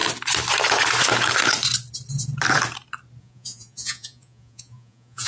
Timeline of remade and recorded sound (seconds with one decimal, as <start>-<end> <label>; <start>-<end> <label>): 0.0-3.2 recorded; 3.2-5.3 remade